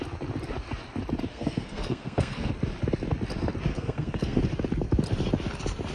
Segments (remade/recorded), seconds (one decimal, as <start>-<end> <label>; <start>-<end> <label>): 0.0-1.3 recorded; 1.3-2.5 remade; 2.5-3.7 recorded; 3.7-4.4 remade; 4.4-5.9 recorded